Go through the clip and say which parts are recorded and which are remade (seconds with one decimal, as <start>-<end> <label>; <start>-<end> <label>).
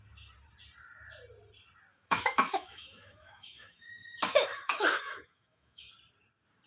0.0-1.9 recorded; 1.9-5.9 remade; 5.9-6.7 recorded